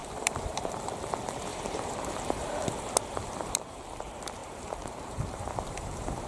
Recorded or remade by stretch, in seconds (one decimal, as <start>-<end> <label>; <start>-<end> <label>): 0.0-0.7 remade; 0.7-1.5 recorded; 1.5-3.8 remade; 3.8-4.4 recorded; 4.4-6.3 remade